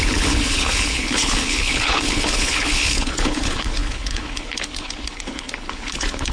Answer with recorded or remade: remade